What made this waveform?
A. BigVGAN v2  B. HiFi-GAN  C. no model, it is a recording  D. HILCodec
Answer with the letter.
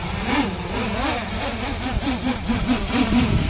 A